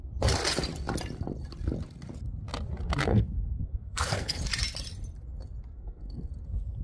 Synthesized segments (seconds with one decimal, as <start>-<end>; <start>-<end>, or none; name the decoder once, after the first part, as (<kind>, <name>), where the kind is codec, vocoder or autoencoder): 3.1-4.4 (codec, SNAC); 5.7-6.3